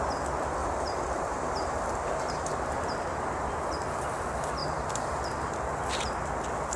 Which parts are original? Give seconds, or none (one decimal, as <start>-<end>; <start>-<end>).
0.0-0.6; 2.5-4.6; 5.2-6.8